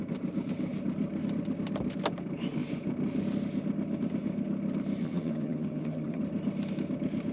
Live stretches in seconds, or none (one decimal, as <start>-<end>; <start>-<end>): 0.0-5.0; 6.2-7.3